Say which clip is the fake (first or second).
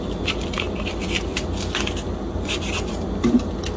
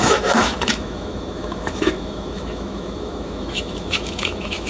second